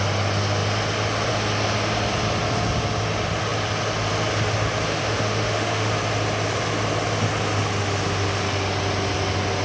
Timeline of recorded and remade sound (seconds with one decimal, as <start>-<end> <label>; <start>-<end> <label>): 0.0-4.9 recorded; 4.9-5.9 remade; 5.9-9.6 recorded